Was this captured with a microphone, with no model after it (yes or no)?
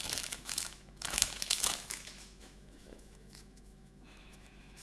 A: no